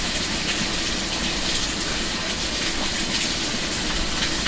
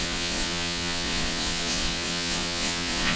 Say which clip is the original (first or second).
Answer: first